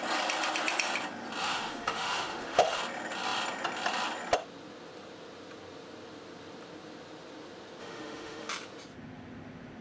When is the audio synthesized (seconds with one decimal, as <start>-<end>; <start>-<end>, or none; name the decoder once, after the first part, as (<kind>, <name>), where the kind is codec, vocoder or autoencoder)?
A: 1.4-2.8 (autoencoder, DAC-VAE); 7.8-8.5